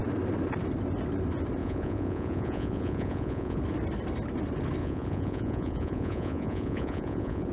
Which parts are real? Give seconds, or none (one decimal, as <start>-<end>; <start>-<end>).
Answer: 0.0-1.6; 3.6-4.8